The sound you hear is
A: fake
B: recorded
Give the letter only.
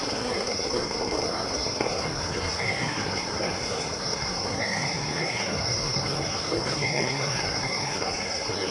A